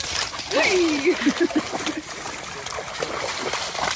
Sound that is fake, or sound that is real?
fake